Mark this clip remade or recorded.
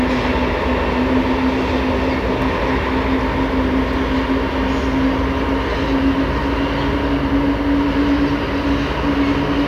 recorded